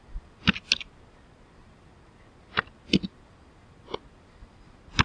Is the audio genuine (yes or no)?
yes